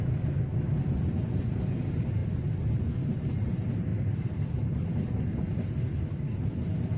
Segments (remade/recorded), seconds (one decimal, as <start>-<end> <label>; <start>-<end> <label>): 0.0-7.0 recorded